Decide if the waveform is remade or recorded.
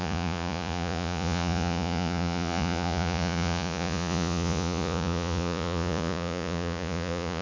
remade